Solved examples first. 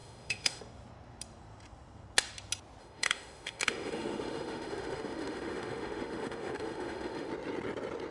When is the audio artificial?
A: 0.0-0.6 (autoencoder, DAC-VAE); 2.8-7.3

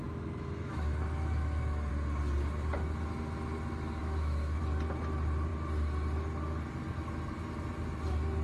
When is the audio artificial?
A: 0.0-1.9 (autoencoder, DAC-VAE); 4.0-4.6

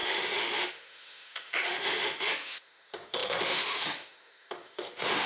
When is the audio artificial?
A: 0.0-5.3 (autoencoder, DAC-VAE)